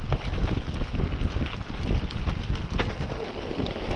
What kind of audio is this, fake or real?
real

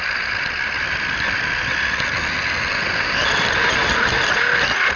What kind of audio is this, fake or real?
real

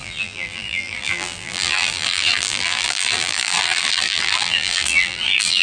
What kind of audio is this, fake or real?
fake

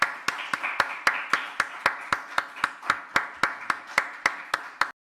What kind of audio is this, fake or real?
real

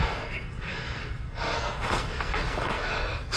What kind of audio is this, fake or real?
fake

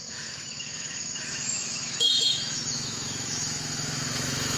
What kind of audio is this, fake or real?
fake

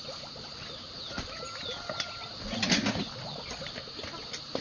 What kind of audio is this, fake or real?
real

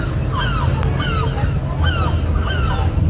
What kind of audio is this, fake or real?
real